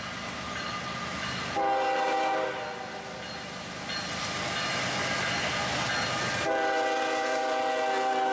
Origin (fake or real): real